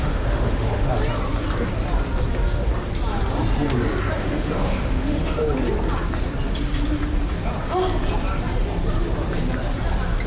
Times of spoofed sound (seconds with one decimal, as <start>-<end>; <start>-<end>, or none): 0.0-0.9; 4.2-5.4